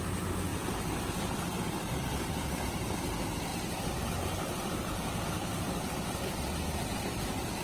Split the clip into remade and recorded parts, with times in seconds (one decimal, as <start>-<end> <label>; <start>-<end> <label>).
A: 0.0-3.5 recorded; 3.5-4.9 remade; 4.9-5.5 recorded; 5.5-6.4 remade; 6.4-7.6 recorded